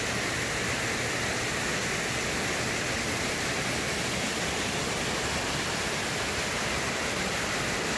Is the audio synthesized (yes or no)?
no